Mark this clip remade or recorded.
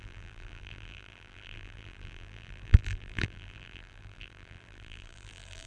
remade